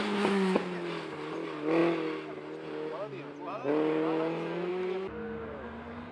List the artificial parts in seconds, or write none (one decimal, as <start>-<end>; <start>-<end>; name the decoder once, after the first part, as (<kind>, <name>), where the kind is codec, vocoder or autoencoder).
none